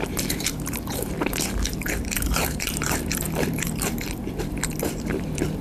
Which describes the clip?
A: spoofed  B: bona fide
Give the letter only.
A